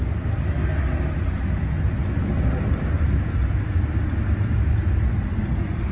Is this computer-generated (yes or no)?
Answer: no